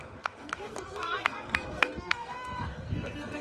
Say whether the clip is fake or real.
fake